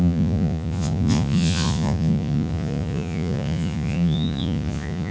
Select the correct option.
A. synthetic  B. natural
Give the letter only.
A